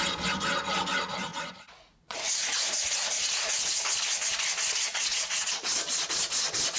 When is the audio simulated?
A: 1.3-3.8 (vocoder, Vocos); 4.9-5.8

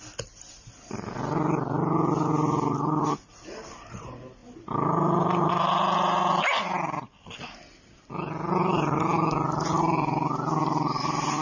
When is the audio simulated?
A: none

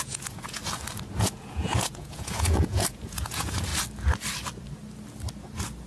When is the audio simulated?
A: 0.0-0.6 (vocoder, Vocos); 1.2-3.7

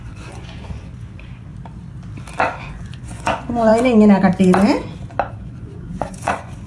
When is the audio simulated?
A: 0.0-1.5 (vocoder, Vocos); 2.6-3.7; 5.3-6.7

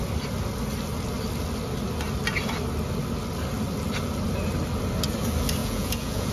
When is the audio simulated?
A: 5.6-6.3 (vocoder, Vocos)

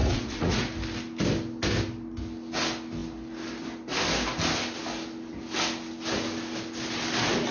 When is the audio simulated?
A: 0.0-0.6 (vocoder, Vocos)